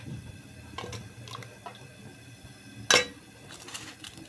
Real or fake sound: real